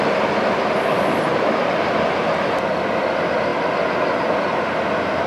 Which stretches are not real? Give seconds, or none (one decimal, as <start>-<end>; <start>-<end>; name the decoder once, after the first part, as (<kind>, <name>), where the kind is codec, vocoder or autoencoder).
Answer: none